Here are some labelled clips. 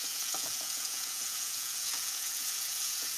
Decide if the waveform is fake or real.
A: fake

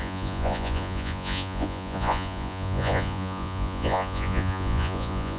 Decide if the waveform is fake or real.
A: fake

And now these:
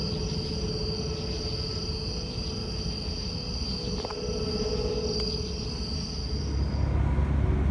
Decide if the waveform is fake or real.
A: real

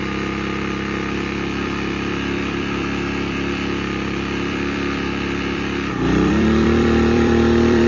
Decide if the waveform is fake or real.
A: fake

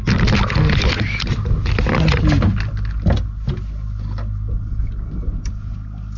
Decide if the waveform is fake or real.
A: real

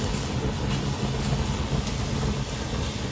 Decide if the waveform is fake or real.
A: real